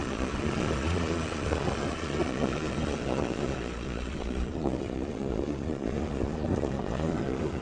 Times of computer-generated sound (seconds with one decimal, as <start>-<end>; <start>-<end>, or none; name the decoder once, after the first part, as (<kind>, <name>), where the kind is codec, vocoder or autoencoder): 0.0-7.6 (vocoder, Vocos)